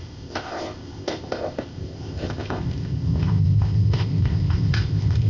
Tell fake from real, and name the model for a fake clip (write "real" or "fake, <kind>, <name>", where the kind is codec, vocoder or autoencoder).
fake, codec, ZipCodec